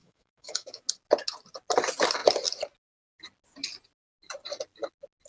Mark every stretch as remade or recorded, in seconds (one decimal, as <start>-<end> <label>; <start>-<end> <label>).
0.0-0.8 remade; 0.8-5.3 recorded